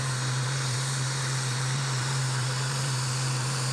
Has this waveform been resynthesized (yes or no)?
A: yes